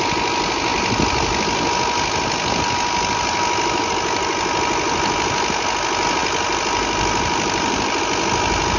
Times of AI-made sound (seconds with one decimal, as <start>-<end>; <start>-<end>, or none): 6.2-8.0